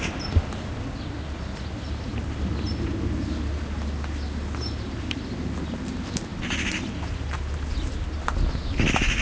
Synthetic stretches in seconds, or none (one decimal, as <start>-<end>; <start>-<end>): none

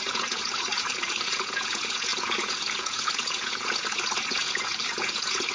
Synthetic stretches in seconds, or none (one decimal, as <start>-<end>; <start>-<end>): 0.0-5.5

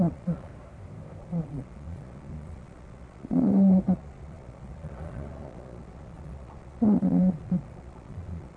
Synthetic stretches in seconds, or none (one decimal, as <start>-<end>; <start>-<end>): 0.0-0.5; 1.2-8.6

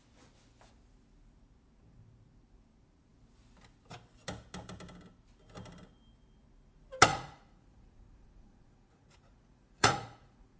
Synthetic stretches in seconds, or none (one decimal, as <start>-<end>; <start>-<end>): 7.1-10.6

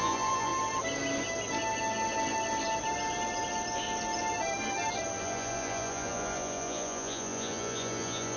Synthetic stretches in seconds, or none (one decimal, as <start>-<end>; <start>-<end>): 0.0-0.5; 5.2-8.4

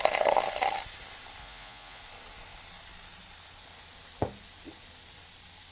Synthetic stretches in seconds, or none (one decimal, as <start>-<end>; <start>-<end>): 1.4-2.0